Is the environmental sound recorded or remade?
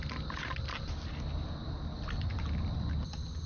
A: recorded